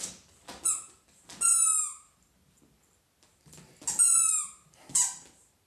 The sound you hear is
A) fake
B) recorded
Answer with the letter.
B